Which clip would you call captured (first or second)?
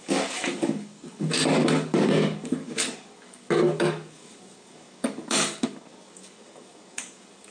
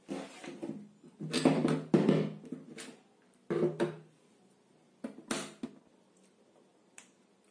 second